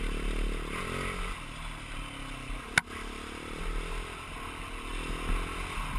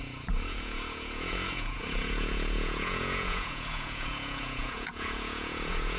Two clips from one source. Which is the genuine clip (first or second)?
first